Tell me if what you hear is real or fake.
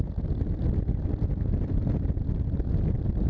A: fake